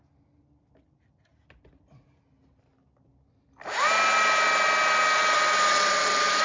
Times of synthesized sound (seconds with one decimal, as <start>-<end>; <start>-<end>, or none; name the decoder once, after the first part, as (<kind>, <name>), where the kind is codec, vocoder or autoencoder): none